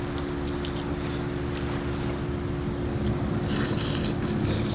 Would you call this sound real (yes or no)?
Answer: yes